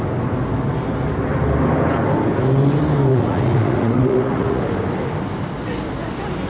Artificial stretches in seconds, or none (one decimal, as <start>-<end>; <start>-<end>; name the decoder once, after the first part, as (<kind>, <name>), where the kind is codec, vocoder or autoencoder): 3.1-4.6 (vocoder, Vocos)